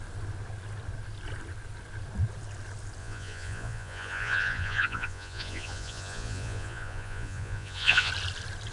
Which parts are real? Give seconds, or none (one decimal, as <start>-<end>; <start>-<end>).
0.0-3.0; 8.1-8.7